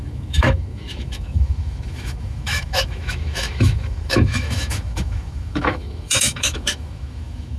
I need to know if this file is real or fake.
fake